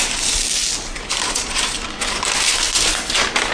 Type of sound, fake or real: real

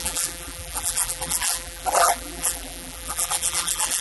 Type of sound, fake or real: fake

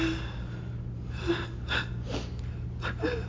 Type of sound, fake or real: real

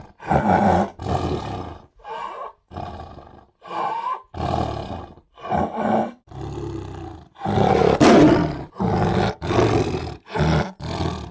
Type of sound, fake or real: real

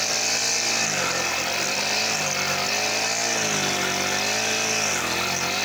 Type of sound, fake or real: real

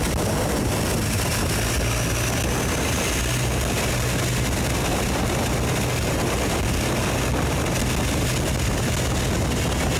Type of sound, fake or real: real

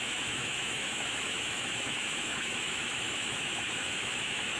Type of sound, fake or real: fake